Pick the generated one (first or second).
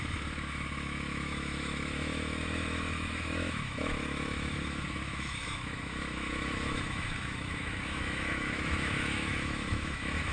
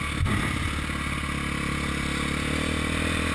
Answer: first